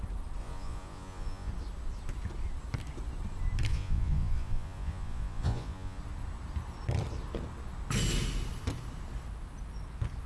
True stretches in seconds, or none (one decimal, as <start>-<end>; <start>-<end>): 0.0-0.4; 1.5-3.7; 6.0-10.3